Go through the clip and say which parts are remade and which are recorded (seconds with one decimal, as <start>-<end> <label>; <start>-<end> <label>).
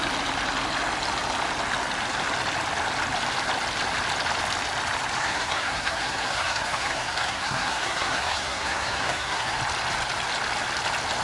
0.0-5.2 recorded; 5.2-9.6 remade; 9.6-11.2 recorded